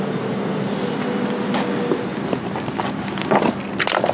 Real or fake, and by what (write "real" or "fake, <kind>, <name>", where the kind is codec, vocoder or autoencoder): real